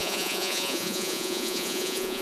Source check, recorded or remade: remade